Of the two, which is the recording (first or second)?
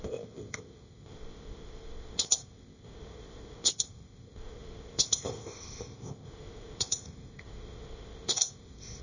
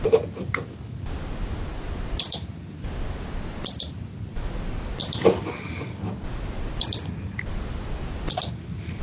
second